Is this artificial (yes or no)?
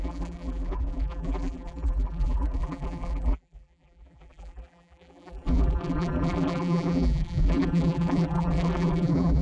yes